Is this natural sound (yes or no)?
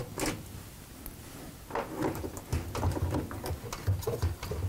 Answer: yes